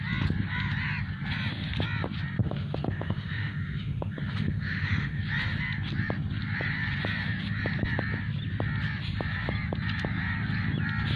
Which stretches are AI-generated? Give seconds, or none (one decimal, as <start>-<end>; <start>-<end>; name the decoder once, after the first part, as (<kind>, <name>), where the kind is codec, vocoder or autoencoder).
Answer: 2.4-5.2 (autoencoder, DAC-VAE)